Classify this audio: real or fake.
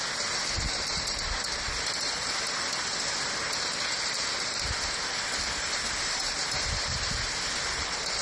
real